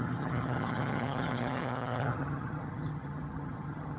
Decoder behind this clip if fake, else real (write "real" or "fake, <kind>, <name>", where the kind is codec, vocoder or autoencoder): fake, vocoder, HiFi-GAN